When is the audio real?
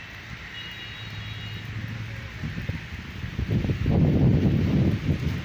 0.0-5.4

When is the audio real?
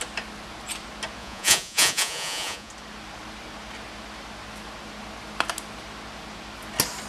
0.0-1.2; 2.7-7.1